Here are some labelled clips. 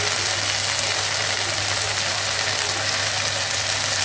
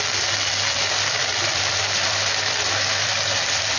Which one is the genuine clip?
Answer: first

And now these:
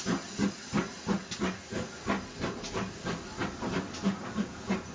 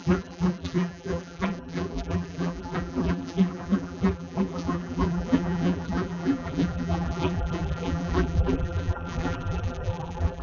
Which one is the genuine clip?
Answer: first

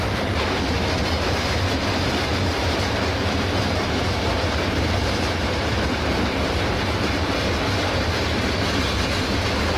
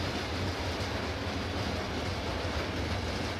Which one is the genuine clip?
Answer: second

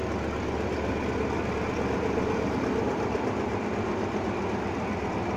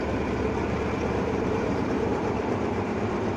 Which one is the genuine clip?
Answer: first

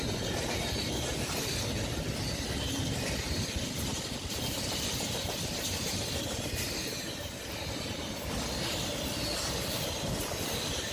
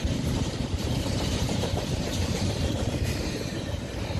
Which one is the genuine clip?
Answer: first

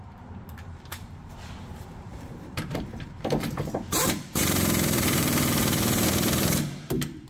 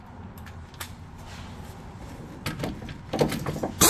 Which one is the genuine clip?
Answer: second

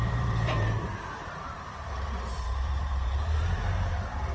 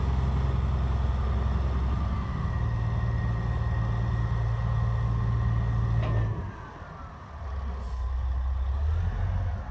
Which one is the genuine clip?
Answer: second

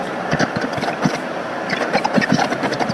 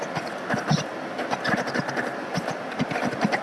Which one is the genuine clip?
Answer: second